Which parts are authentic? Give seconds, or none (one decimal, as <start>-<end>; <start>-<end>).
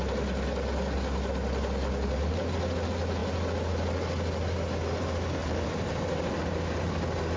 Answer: 0.0-5.4; 6.4-7.4